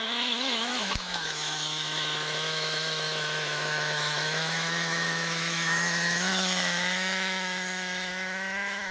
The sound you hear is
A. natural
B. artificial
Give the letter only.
B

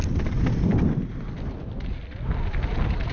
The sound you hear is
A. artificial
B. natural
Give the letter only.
B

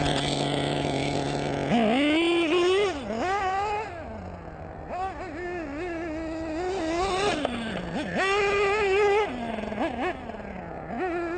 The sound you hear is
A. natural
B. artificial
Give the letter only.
A